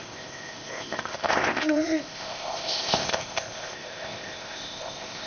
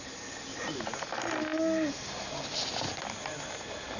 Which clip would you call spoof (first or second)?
first